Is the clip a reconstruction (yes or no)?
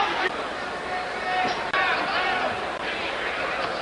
no